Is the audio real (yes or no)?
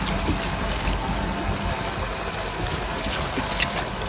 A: yes